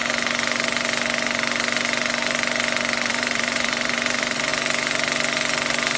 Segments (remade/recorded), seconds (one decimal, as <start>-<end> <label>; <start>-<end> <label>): 0.0-3.1 recorded; 3.1-4.5 remade; 4.5-6.0 recorded